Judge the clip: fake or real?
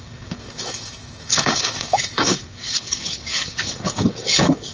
fake